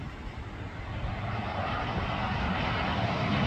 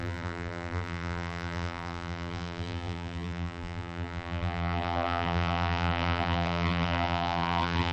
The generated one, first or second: second